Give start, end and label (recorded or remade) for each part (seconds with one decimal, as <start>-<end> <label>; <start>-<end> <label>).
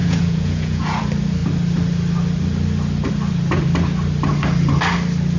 0.0-1.0 remade; 1.0-5.4 recorded